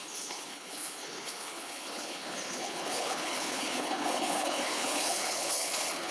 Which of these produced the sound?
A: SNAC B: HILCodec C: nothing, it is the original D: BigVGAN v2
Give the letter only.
B